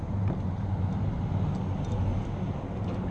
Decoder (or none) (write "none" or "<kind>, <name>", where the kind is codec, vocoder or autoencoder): none